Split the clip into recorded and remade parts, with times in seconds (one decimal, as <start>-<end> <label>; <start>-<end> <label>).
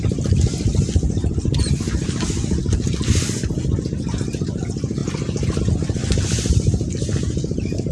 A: 0.0-7.9 recorded